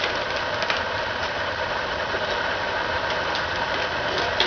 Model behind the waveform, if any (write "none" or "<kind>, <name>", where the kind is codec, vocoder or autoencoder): none